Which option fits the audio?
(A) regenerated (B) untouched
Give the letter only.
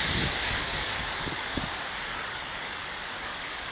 A